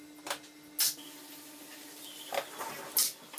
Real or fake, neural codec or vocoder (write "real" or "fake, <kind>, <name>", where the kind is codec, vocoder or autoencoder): real